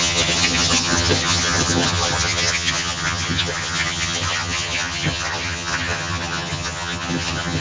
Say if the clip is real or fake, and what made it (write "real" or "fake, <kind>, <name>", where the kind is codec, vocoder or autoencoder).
fake, vocoder, HiFi-GAN